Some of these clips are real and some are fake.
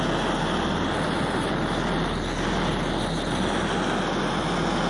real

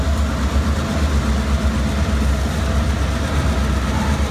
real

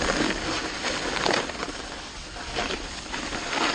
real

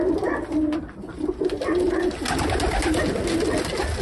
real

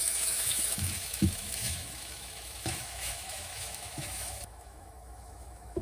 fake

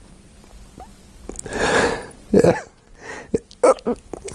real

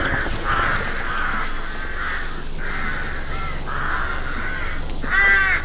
real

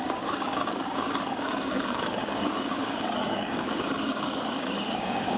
fake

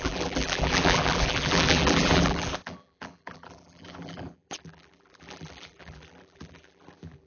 fake